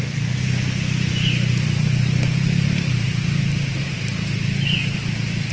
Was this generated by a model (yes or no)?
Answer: no